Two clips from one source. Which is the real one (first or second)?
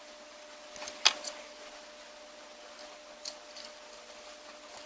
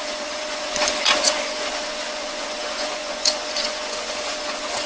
first